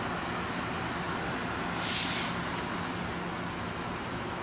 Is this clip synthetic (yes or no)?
no